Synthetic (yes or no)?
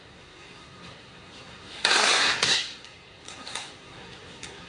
yes